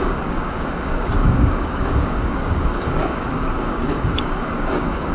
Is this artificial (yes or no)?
yes